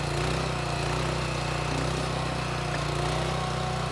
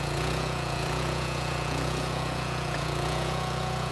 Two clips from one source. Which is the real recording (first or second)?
first